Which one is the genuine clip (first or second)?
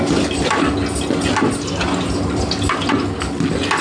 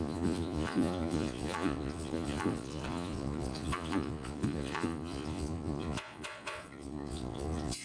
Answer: first